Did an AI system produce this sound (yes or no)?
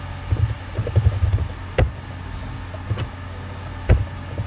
no